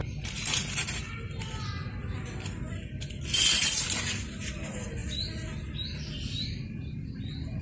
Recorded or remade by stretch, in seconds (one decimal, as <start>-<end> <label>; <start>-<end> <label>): 0.0-7.6 recorded